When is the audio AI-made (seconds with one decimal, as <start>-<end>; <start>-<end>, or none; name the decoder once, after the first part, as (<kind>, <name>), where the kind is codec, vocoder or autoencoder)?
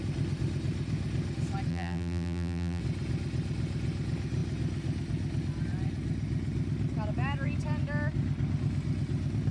1.7-2.8 (vocoder, BigVGAN v2)